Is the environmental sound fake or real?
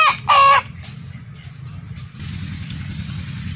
real